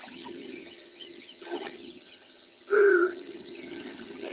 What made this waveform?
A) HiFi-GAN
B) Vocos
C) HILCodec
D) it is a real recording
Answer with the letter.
A